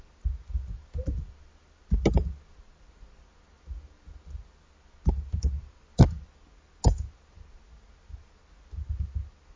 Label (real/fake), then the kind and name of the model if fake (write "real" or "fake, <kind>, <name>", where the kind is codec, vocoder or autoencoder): real